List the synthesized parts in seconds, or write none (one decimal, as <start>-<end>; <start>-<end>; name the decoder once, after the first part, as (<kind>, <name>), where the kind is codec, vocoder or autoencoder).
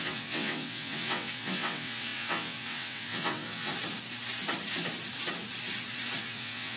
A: 0.0-3.7 (vocoder, WaveNeXt); 6.2-6.8